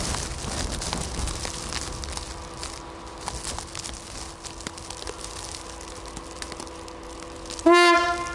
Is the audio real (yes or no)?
yes